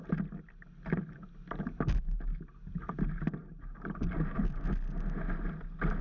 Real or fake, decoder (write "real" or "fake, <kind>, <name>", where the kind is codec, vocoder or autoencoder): real